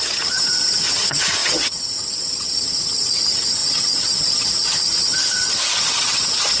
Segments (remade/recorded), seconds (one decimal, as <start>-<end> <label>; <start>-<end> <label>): 0.0-6.6 remade